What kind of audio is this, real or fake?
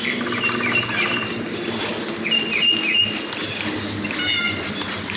real